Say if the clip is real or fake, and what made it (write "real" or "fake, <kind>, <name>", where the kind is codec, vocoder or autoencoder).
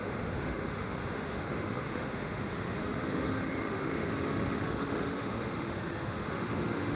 fake, autoencoder, DAC-VAE